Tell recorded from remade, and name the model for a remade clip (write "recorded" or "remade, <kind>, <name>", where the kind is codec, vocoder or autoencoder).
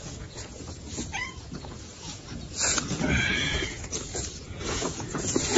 remade, vocoder, Vocos